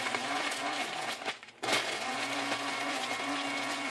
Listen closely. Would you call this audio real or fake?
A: fake